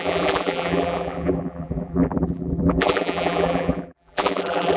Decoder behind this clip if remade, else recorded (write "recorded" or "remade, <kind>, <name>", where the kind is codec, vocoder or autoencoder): remade, vocoder, BigVGAN v2